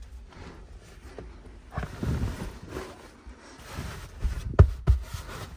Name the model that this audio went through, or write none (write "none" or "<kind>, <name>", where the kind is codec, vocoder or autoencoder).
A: none